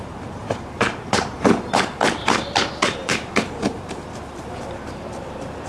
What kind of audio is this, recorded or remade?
remade